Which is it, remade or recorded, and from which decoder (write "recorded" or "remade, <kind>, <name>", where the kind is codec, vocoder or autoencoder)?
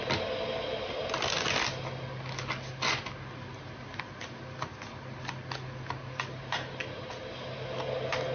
recorded